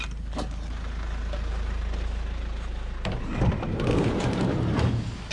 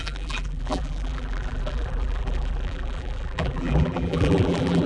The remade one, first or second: second